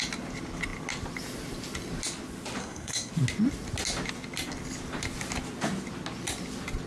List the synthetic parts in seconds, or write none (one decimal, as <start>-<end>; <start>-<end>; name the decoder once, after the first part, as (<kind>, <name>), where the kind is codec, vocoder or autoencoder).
2.6-3.1 (codec, SNAC)